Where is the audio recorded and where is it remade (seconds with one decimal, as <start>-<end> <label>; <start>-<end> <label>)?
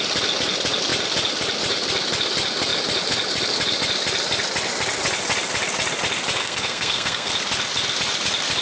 0.0-6.4 recorded; 6.4-7.3 remade; 7.3-8.6 recorded